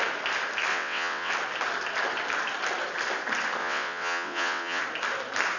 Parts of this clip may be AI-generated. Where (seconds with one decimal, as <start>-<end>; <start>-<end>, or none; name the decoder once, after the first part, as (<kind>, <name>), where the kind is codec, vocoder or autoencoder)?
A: 0.7-1.3 (vocoder, WaveNeXt); 3.6-4.8